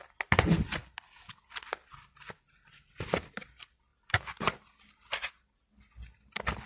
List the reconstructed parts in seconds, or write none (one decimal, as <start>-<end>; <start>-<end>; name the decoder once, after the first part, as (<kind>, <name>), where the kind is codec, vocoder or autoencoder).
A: none